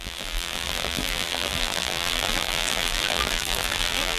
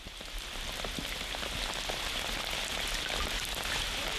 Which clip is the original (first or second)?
second